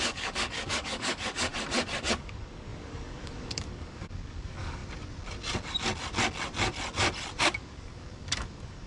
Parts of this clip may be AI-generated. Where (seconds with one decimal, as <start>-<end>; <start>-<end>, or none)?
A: 0.0-1.5; 2.1-4.8; 7.4-8.9